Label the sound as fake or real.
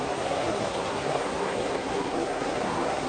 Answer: fake